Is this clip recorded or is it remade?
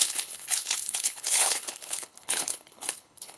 remade